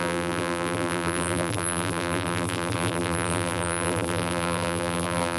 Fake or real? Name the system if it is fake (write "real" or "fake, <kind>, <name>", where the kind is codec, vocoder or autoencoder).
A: fake, vocoder, BigVGAN v2